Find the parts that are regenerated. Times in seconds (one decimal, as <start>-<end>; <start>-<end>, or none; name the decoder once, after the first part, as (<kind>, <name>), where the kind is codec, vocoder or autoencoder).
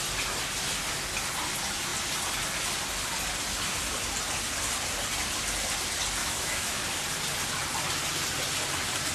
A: 6.2-6.8 (autoencoder, DAC-VAE)